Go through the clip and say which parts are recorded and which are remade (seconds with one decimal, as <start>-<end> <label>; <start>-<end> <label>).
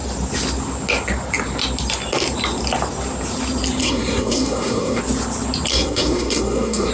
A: 0.0-3.8 recorded; 3.8-5.0 remade; 5.0-5.7 recorded; 5.7-6.9 remade